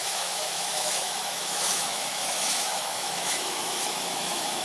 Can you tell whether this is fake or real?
fake